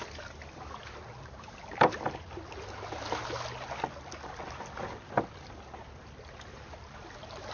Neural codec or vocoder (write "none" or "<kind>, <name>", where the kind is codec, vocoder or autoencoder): none